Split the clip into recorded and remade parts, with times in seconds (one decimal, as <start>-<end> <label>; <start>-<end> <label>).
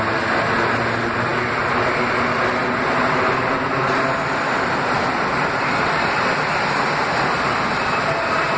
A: 0.0-8.6 recorded